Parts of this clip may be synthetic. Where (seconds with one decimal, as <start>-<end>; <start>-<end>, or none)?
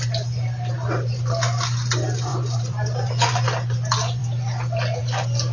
2.3-3.1